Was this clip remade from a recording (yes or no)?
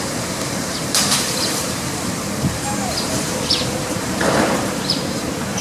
yes